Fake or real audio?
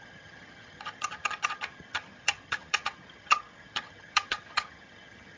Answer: fake